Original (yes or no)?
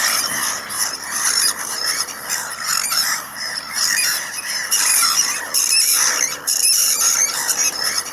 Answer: no